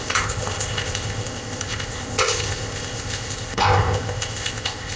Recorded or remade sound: remade